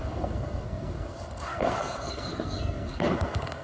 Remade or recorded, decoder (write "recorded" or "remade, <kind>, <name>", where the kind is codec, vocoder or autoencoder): remade, codec, SNAC